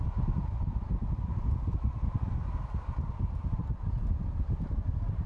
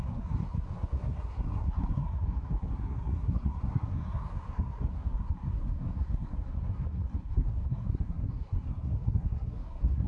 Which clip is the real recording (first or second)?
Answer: first